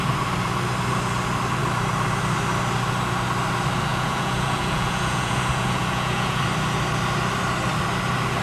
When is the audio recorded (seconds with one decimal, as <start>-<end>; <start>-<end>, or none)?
0.0-3.9; 6.4-8.4